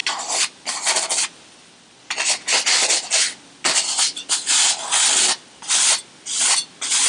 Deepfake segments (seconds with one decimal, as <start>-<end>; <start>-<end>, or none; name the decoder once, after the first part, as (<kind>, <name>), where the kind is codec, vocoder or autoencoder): none